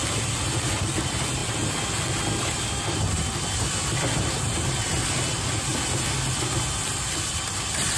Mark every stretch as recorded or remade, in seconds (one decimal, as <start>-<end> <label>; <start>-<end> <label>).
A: 0.0-8.0 recorded